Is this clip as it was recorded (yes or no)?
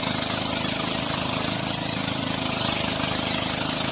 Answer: yes